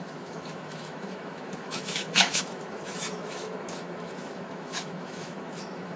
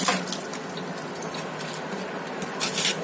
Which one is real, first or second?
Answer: second